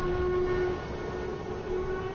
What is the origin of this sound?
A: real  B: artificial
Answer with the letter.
A